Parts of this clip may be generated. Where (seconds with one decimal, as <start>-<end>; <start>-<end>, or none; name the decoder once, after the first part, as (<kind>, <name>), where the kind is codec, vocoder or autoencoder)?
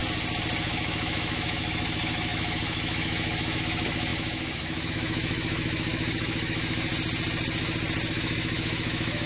0.6-6.9 (autoencoder, DAC-VAE); 8.1-9.3